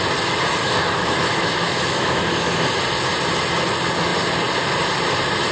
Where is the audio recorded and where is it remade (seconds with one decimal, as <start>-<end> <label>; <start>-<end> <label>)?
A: 0.0-0.6 recorded; 0.6-2.8 remade; 2.8-5.5 recorded